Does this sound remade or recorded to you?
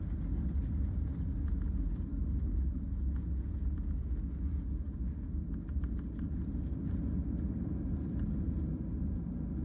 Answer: recorded